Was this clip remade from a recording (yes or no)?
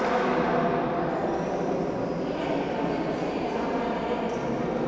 no